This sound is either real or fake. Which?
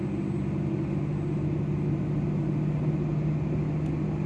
real